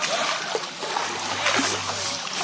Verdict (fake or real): real